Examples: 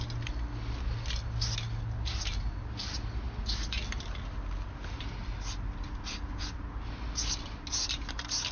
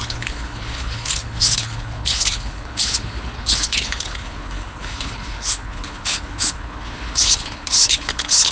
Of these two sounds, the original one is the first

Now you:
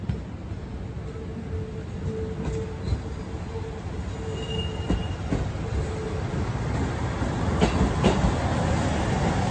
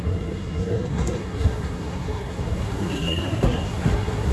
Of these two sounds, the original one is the first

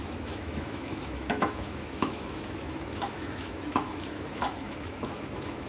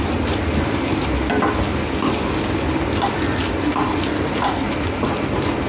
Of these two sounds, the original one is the second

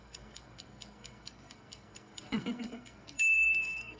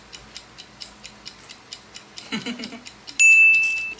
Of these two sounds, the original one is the second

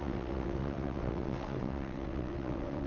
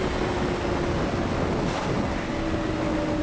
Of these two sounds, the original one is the second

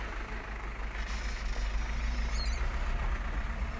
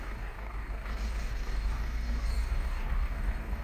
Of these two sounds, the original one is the first